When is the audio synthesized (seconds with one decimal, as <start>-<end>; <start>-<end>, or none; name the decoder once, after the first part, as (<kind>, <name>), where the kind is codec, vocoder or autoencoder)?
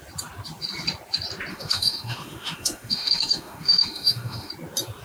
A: 1.5-4.5 (autoencoder, DAC-VAE)